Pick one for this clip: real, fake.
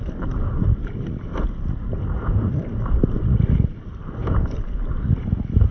real